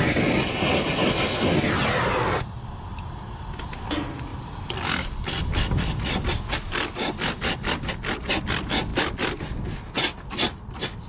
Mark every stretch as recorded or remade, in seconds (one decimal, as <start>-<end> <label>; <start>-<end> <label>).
0.0-11.1 recorded